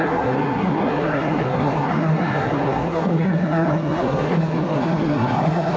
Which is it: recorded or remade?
remade